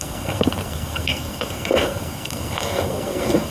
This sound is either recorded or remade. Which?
remade